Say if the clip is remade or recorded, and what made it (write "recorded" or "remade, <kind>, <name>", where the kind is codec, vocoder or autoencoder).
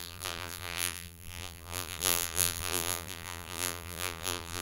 remade, vocoder, BigVGAN v2